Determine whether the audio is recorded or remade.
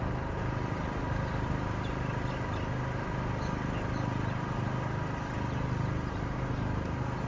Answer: recorded